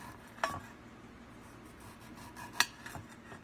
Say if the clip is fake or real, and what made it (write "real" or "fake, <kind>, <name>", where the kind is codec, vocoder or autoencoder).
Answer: real